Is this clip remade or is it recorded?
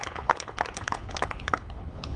remade